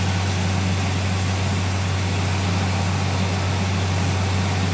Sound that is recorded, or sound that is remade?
recorded